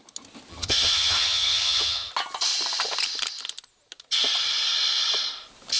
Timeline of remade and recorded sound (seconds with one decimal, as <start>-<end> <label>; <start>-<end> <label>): 0.0-0.5 recorded; 0.5-2.1 remade; 2.1-5.8 recorded